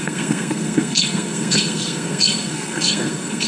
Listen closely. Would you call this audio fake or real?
fake